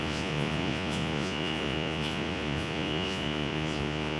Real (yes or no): no